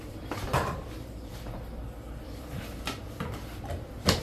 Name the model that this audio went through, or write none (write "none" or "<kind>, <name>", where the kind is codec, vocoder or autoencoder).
vocoder, BigVGAN v2